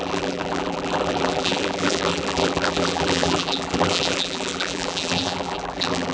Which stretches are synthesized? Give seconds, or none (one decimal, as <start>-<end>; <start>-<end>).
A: 0.0-6.1